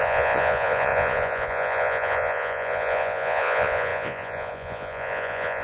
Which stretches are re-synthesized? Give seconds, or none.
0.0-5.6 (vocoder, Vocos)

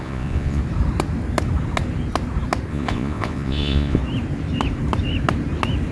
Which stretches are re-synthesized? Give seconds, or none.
0.0-0.6 (vocoder, Vocos); 2.7-4.0

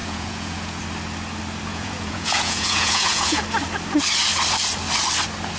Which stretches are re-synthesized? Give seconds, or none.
0.0-0.8 (vocoder, Vocos); 1.7-3.4